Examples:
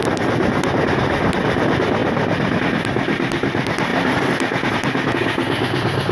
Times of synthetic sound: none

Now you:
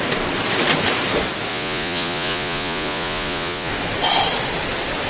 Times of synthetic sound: 1.5-3.7 (vocoder, Vocos)

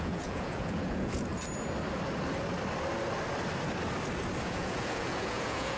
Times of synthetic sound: 0.0-1.3 (vocoder, Vocos); 4.4-5.8

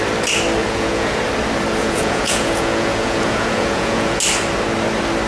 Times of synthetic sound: 0.6-1.2 (vocoder, Vocos); 1.8-4.2

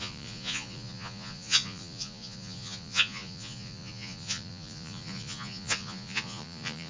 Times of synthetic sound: 0.0-6.9 (vocoder, Vocos)

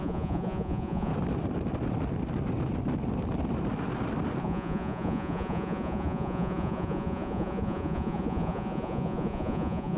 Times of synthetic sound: 0.0-1.1 (vocoder, Vocos); 4.4-10.0

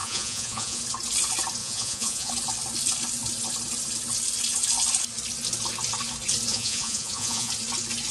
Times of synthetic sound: 0.0-0.8 (vocoder, Vocos); 1.6-2.3; 6.5-7.5